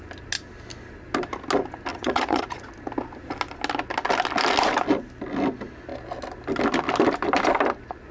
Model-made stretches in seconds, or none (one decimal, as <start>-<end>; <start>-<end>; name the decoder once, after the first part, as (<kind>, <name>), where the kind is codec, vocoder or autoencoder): 1.9-2.7 (vocoder, Vocos)